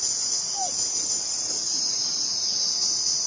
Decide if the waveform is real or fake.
real